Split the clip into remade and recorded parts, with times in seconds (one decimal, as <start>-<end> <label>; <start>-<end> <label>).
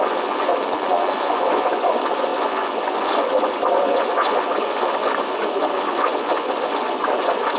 0.0-0.5 remade; 0.5-1.1 recorded; 1.1-7.6 remade